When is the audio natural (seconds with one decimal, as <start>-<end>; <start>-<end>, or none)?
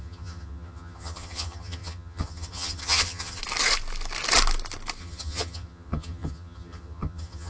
3.4-5.0